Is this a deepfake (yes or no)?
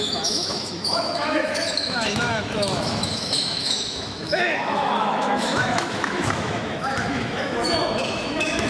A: yes